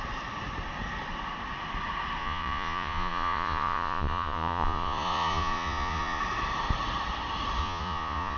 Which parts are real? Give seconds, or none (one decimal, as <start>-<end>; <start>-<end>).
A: 0.0-2.2; 6.2-7.6